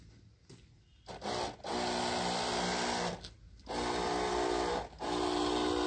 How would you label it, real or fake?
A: real